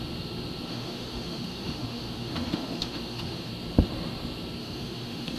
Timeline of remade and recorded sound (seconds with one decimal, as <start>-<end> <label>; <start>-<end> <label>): 0.0-0.7 recorded; 0.7-3.5 remade; 3.5-4.6 recorded; 4.6-5.4 remade